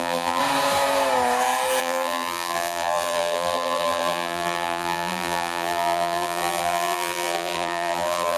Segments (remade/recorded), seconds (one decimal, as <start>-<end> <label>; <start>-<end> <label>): 0.0-0.4 remade; 0.4-1.8 recorded; 1.8-8.4 remade